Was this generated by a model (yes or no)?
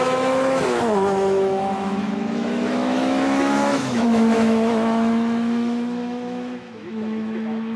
yes